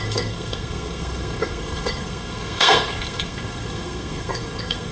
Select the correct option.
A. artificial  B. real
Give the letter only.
A